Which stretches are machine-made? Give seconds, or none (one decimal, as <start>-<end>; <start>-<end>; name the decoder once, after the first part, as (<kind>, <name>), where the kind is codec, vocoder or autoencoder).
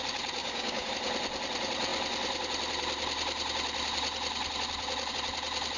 0.4-0.9 (codec, DAC)